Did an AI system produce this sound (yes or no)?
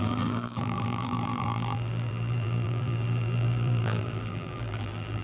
yes